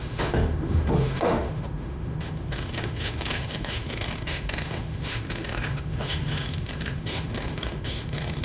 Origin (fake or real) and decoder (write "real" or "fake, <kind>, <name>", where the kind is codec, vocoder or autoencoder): fake, autoencoder, DAC-VAE